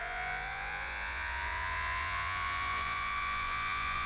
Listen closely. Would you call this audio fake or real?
fake